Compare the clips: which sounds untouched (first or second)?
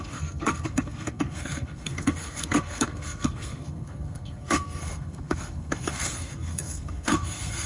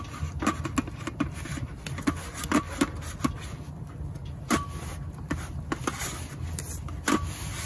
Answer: second